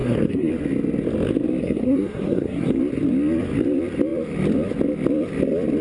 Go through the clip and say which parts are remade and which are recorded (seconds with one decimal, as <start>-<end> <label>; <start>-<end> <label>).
0.0-0.5 remade; 0.5-1.6 recorded; 1.6-2.8 remade; 2.8-5.8 recorded